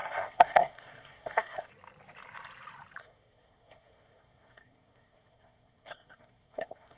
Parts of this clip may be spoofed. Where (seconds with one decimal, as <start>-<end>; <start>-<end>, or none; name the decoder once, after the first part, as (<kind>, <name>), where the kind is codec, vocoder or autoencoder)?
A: 0.0-1.7 (codec, SNAC); 3.0-7.0